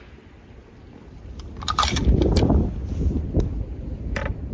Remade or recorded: recorded